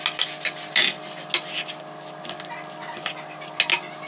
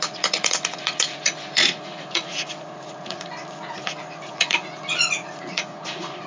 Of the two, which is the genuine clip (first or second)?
first